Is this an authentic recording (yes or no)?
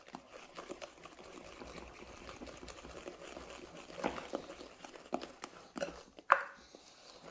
yes